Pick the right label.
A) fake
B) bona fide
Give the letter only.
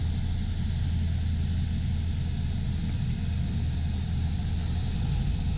B